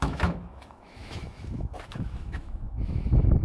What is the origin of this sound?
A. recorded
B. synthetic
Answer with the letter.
B